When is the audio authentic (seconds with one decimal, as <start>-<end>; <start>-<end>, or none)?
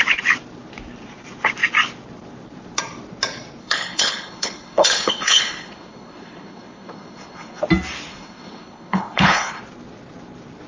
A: 0.0-3.6; 7.6-8.1; 9.6-10.7